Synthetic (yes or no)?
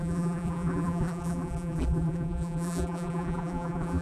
yes